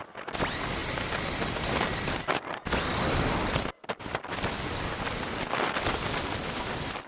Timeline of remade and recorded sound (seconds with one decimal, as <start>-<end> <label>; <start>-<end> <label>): 0.0-7.1 recorded